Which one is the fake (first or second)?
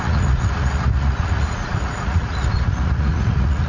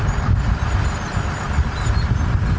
first